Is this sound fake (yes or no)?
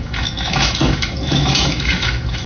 yes